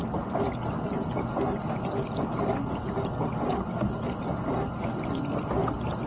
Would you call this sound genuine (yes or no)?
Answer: yes